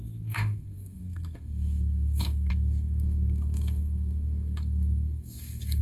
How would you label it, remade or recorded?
remade